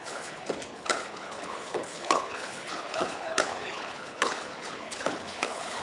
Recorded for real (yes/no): no